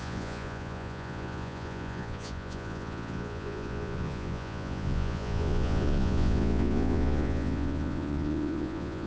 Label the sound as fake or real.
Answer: fake